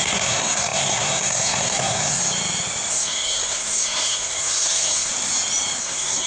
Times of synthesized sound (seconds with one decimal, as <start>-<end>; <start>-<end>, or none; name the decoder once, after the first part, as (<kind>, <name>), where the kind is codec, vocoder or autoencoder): 0.0-2.2 (codec, SNAC); 2.9-5.1; 5.8-6.3